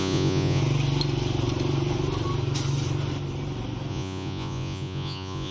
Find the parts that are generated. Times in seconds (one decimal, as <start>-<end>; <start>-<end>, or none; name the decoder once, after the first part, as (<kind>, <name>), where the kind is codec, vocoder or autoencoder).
0.0-0.6 (vocoder, Vocos); 3.9-5.5